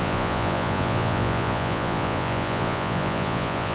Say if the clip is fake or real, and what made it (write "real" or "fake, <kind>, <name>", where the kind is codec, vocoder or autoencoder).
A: fake, vocoder, Vocos